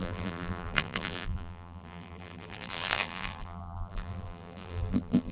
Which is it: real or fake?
fake